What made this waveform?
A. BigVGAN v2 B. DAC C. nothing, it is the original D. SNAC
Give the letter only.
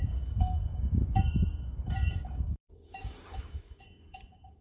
B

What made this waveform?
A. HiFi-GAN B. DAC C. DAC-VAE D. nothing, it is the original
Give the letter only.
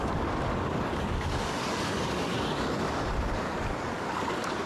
B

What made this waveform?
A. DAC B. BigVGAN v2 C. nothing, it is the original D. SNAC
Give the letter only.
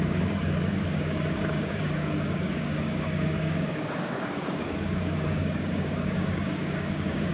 A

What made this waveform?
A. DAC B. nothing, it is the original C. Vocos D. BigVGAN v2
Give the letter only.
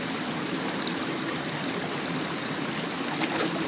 B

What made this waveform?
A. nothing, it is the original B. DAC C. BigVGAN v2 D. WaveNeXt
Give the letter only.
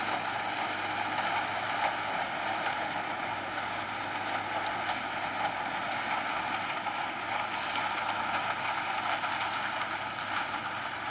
A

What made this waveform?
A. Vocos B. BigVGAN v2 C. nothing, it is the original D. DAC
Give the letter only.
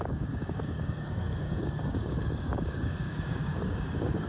D